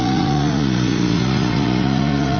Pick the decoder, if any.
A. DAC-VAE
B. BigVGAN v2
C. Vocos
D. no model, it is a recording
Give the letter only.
C